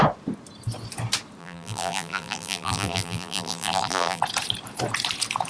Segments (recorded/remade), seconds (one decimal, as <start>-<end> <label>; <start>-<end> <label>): 0.0-1.4 recorded; 1.4-4.2 remade; 4.2-5.5 recorded